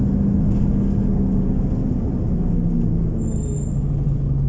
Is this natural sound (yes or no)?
yes